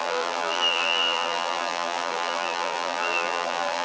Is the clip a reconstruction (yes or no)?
yes